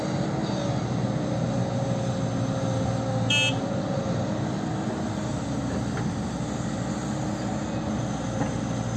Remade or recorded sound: recorded